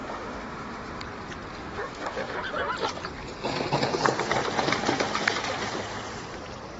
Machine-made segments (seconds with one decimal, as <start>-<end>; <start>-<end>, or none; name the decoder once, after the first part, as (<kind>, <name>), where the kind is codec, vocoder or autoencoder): 0.0-1.0 (autoencoder, DAC-VAE); 1.6-2.4